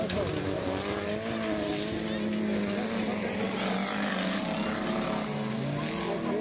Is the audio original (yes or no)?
yes